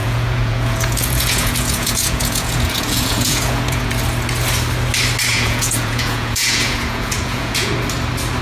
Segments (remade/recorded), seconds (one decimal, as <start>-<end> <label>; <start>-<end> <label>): 0.0-3.9 remade; 3.9-5.3 recorded; 5.3-7.7 remade; 7.7-8.4 recorded